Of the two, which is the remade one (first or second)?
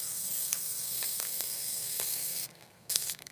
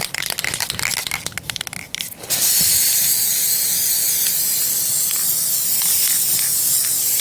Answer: first